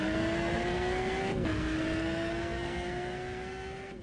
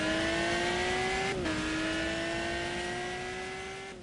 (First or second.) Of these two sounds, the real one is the second